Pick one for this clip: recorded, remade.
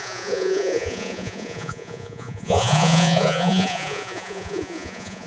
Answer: remade